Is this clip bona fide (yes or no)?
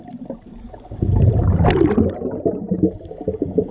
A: yes